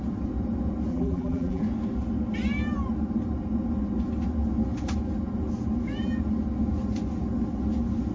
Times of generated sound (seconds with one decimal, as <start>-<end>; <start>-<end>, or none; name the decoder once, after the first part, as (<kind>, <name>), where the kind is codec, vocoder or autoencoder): 0.9-1.6 (vocoder, BigVGAN v2)